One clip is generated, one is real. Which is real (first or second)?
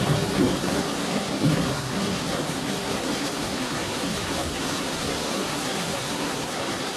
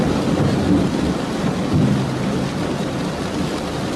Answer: second